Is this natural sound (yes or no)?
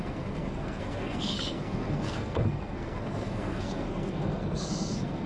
no